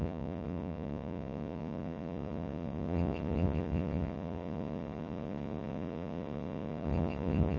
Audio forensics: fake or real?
fake